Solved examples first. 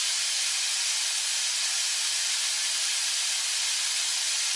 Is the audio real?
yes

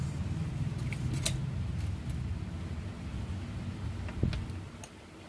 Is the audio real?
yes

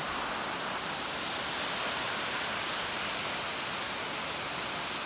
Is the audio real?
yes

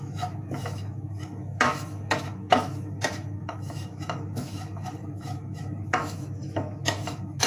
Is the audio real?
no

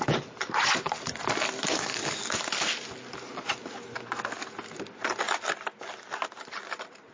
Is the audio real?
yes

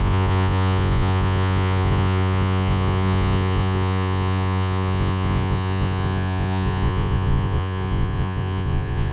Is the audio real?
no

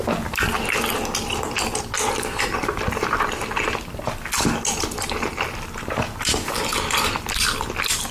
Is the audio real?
yes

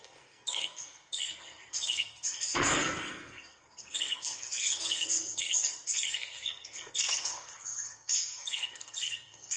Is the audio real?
no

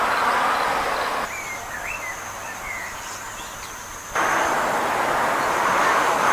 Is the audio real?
yes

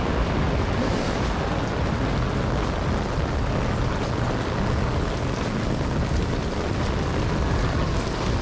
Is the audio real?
yes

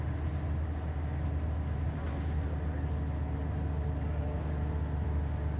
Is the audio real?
yes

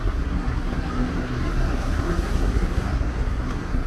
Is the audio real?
no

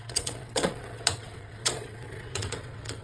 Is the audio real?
no